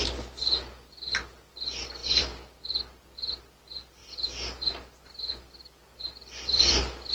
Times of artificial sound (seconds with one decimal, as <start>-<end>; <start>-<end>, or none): 2.0-3.5; 4.0-7.1